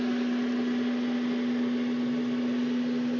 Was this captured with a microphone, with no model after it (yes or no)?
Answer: yes